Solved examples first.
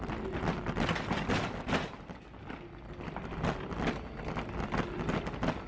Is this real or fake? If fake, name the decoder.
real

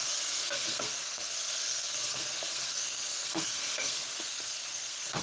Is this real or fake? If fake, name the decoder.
fake, codec, SNAC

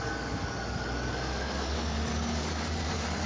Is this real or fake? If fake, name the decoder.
fake, codec, DAC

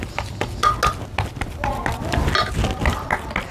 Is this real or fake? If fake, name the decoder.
real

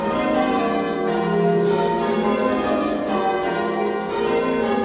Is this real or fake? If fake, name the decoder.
real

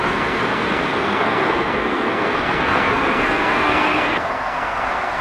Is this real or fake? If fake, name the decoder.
fake, codec, SNAC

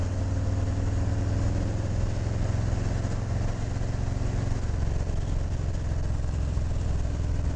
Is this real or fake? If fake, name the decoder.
real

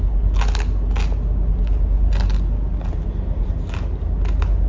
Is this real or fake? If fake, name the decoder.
real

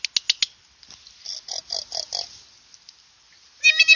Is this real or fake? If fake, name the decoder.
real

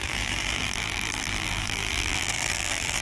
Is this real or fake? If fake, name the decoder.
fake, vocoder, BigVGAN v2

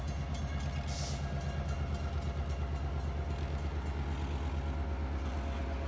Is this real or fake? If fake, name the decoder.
real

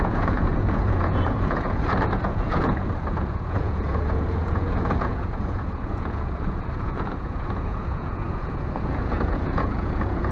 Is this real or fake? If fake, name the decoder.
fake, vocoder, Vocos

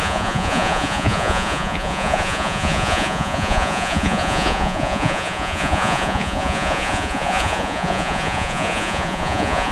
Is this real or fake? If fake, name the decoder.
fake, vocoder, Vocos